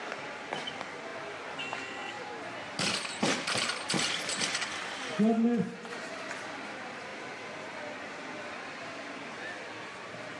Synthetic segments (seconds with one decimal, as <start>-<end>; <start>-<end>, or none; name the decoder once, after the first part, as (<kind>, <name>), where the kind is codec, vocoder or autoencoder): none